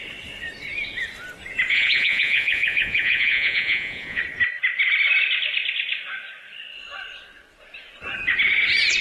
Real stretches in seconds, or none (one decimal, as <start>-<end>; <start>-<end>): 0.0-1.7; 4.2-9.0

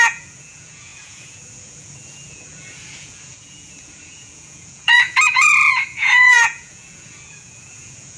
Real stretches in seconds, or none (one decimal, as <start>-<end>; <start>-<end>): none

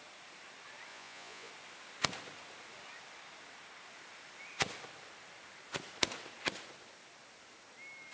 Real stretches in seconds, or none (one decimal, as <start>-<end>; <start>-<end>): 0.0-0.9; 1.5-8.1

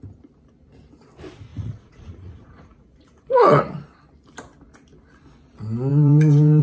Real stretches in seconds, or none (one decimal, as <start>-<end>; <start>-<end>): 0.0-1.5; 3.6-5.9

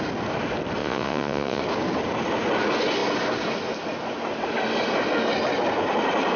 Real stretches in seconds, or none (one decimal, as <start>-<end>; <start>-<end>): 0.0-0.8; 1.6-6.4

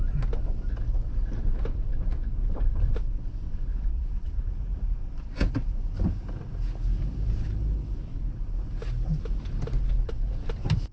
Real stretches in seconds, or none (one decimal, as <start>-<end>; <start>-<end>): 0.0-3.9; 5.0-10.9